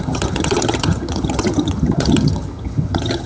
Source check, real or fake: fake